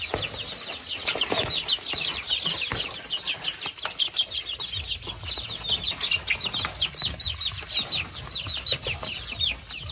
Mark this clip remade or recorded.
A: recorded